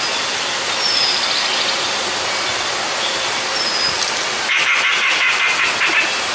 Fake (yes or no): no